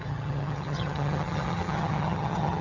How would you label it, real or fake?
fake